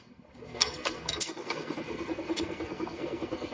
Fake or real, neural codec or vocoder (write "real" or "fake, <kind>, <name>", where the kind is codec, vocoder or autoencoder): fake, codec, SNAC